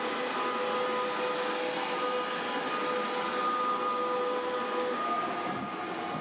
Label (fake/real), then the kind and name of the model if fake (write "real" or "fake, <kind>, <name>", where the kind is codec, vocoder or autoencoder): real